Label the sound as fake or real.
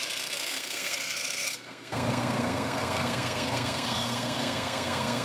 fake